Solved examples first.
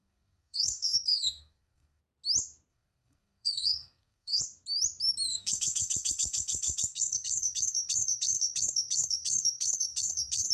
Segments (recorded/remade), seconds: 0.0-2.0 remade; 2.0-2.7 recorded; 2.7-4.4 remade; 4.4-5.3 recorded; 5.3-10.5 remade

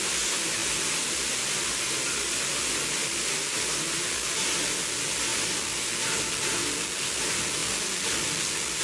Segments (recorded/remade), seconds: 0.0-8.8 recorded

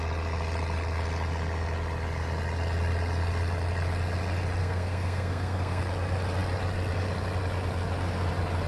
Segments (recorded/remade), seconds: 0.0-4.6 recorded; 4.6-5.8 remade; 5.8-8.7 recorded

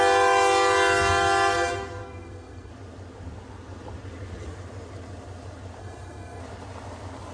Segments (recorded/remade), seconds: 0.0-2.0 recorded; 2.0-2.7 remade; 2.7-5.8 recorded; 5.8-6.4 remade; 6.4-7.3 recorded

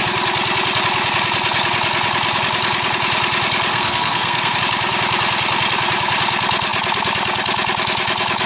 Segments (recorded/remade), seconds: 0.0-3.7 recorded; 3.7-4.6 remade; 4.6-8.5 recorded